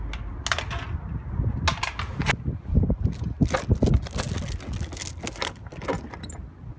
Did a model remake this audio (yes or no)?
no